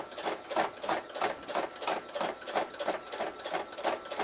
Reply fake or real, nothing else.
real